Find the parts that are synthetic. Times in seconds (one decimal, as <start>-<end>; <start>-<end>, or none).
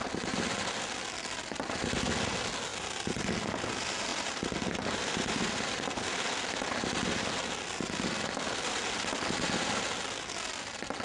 2.7-3.2; 4.1-6.0